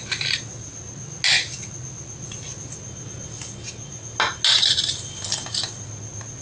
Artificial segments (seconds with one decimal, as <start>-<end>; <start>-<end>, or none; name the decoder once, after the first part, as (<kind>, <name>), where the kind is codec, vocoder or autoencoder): none